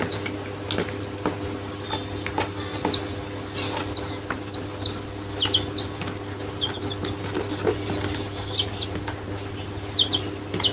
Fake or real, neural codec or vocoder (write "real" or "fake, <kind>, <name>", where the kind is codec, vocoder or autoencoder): real